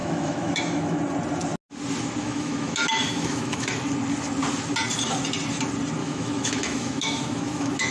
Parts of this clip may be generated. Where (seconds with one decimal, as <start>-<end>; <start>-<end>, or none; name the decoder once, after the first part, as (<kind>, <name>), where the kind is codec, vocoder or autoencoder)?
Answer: 0.0-1.0 (autoencoder, DAC-VAE); 2.2-3.8; 6.0-7.9